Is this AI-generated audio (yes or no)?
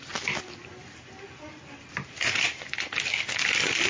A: no